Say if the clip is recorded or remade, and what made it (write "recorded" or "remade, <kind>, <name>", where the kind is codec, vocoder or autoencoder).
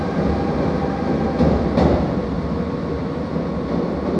recorded